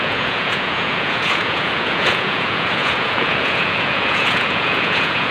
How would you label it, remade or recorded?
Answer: remade